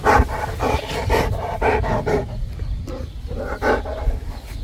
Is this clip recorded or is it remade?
recorded